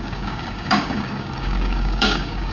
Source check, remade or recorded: remade